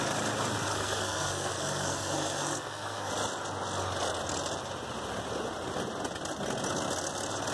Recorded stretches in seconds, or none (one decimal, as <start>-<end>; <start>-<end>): 0.0-0.7; 3.1-7.5